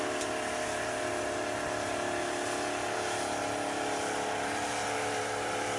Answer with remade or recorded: remade